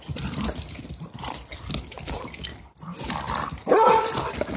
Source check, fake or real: real